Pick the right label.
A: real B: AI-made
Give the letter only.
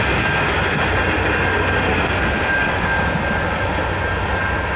A